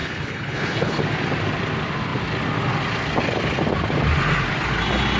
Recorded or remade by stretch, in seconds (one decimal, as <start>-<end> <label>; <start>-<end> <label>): 0.0-1.0 remade; 1.0-5.2 recorded